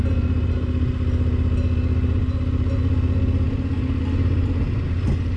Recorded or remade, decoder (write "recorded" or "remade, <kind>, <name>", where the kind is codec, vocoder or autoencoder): recorded